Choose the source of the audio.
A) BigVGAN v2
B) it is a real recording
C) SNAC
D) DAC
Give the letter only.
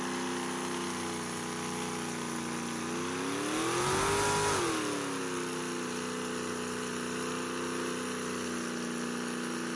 B